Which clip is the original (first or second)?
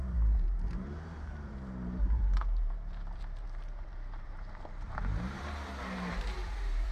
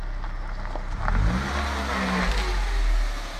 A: second